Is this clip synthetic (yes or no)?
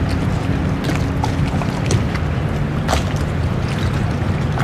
no